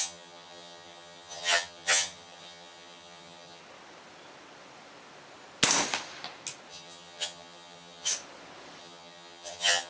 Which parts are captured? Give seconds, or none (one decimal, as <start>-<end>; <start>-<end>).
3.6-6.7; 8.1-8.8